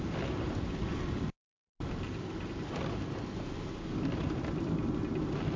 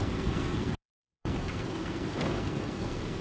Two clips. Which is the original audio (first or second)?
first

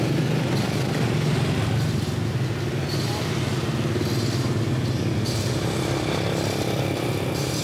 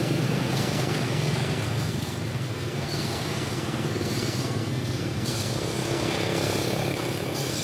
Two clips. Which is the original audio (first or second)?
first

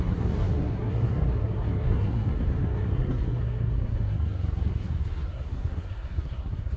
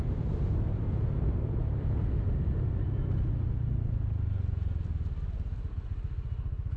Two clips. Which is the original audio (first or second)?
second